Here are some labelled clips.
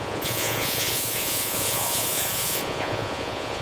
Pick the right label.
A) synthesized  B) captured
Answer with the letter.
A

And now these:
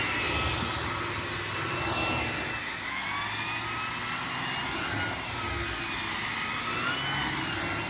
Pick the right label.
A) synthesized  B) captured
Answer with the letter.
B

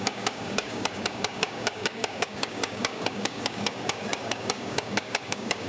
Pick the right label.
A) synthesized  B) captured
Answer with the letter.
A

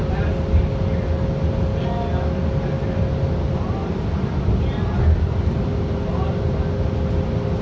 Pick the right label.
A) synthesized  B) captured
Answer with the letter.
B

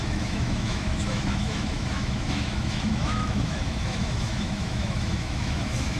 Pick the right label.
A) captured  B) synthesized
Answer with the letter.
B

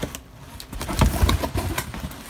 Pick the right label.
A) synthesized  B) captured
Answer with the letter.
B